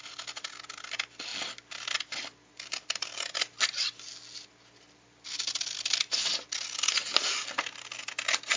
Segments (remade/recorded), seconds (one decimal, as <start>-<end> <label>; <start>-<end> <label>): 0.0-8.6 recorded